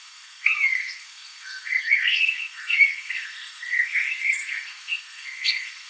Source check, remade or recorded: remade